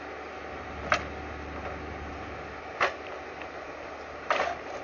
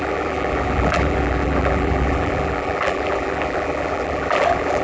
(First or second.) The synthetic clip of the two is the second